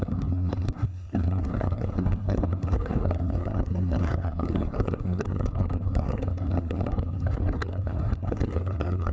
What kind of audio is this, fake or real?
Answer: fake